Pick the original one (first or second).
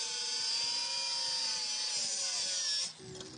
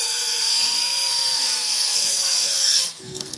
first